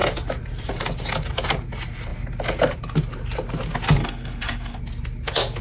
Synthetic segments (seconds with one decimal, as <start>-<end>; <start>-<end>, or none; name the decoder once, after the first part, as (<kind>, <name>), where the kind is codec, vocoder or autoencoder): 4.0-4.8 (codec, SNAC)